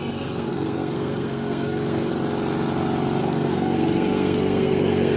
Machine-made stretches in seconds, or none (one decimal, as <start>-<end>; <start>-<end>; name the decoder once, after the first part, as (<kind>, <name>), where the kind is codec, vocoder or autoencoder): 0.0-2.1 (codec, SNAC); 3.2-5.2